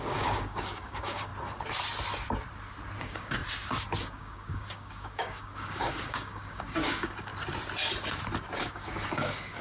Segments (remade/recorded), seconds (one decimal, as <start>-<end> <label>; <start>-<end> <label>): 0.0-1.3 remade; 1.3-3.0 recorded; 3.0-3.4 remade; 3.4-4.2 recorded; 4.2-7.3 remade; 7.3-8.6 recorded; 8.6-9.6 remade